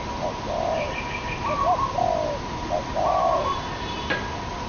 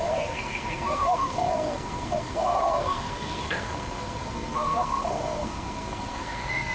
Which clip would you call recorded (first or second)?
first